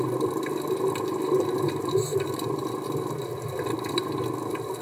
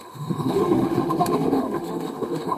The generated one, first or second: second